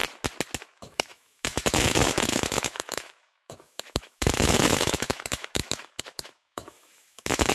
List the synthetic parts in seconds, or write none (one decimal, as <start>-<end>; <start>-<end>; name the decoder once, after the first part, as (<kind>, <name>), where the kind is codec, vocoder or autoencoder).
0.6-7.5 (autoencoder, DAC-VAE)